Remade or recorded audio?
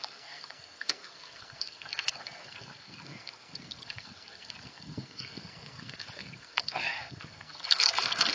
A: remade